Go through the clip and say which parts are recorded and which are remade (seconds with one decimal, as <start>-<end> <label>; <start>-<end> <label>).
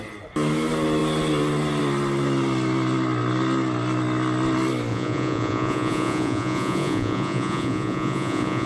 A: 0.0-4.9 recorded; 4.9-8.7 remade